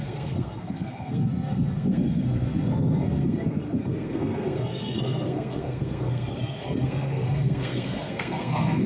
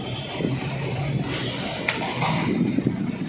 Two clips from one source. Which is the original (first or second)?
second